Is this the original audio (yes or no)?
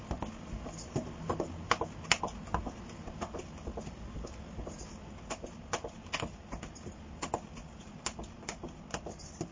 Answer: yes